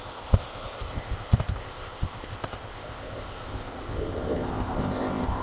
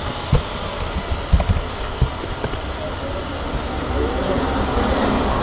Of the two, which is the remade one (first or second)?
first